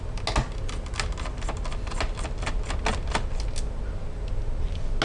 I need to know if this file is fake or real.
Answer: real